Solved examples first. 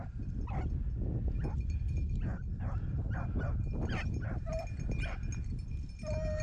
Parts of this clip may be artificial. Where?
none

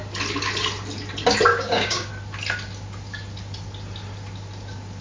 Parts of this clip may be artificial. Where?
1.5-2.1 (codec, DAC)

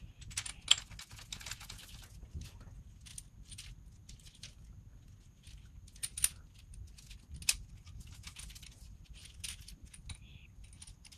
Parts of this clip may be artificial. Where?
none